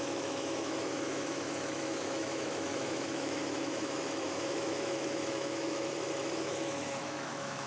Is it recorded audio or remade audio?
remade